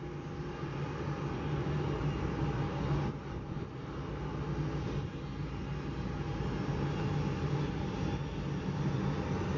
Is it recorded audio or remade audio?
recorded